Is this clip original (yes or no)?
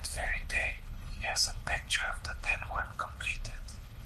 no